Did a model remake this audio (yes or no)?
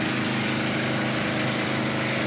no